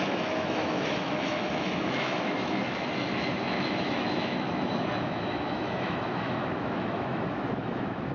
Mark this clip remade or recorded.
remade